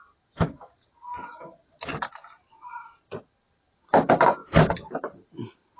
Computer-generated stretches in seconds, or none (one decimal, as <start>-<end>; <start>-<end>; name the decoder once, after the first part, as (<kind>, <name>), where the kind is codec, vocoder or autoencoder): 4.4-5.8 (vocoder, BigVGAN v2)